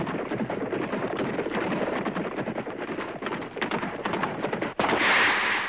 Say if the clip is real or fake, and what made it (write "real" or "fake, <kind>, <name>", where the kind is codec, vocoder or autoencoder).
real